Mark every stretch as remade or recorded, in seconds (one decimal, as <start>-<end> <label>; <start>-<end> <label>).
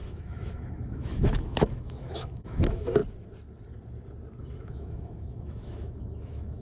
0.0-3.0 remade; 3.0-4.4 recorded; 4.4-6.6 remade